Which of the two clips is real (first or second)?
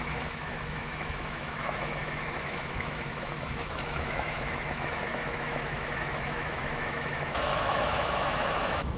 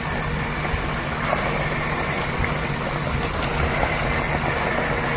second